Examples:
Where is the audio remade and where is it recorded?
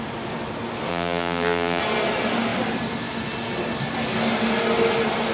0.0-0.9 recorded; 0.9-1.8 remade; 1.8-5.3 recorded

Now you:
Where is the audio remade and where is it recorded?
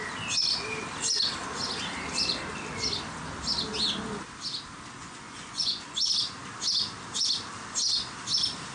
0.0-5.0 recorded; 5.0-6.1 remade; 6.1-8.7 recorded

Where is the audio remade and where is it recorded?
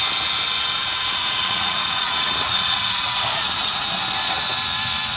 0.0-0.8 recorded; 0.8-3.9 remade; 3.9-5.2 recorded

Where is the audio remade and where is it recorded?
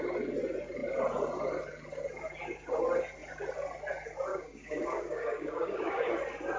0.0-4.3 recorded; 4.3-6.1 remade; 6.1-6.6 recorded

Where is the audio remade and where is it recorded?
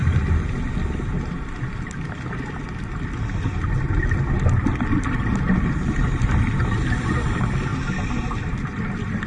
0.0-9.3 recorded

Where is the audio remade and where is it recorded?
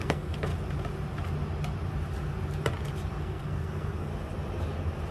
0.0-0.5 remade; 0.5-3.2 recorded; 3.2-4.1 remade; 4.1-5.1 recorded